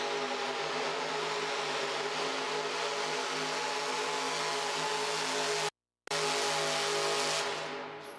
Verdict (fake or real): real